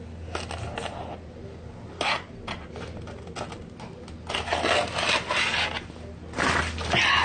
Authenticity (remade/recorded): recorded